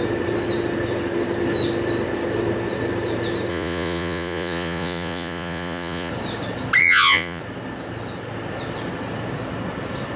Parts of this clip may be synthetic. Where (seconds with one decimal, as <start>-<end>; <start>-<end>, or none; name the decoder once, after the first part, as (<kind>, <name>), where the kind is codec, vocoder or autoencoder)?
3.5-6.1 (vocoder, Vocos); 6.8-7.4